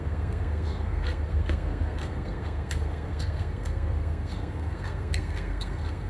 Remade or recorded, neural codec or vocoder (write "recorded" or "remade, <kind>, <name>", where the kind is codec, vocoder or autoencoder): remade, codec, SNAC